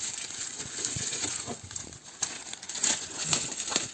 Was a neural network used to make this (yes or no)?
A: yes